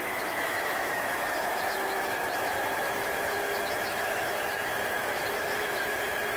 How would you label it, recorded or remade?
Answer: remade